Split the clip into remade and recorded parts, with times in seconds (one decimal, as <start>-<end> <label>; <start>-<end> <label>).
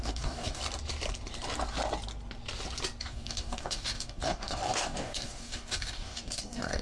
0.0-0.6 remade; 0.6-3.0 recorded; 3.0-6.8 remade